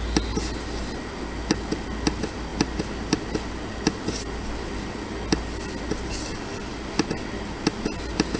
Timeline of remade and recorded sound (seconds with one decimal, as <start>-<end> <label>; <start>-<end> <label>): 0.0-8.4 recorded